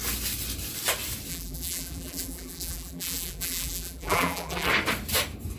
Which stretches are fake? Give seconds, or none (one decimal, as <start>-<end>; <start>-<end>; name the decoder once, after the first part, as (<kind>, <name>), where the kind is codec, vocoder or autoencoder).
1.3-4.7 (vocoder, BigVGAN v2)